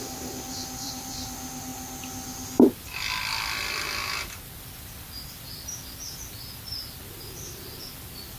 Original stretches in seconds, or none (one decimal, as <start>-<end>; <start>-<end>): 1.7-2.7